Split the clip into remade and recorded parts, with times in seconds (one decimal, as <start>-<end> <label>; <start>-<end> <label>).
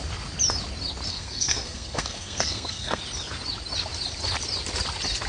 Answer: 0.0-1.1 recorded; 1.1-3.0 remade; 3.0-5.3 recorded